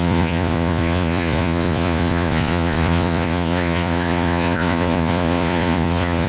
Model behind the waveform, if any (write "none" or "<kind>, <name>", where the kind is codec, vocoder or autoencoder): vocoder, Vocos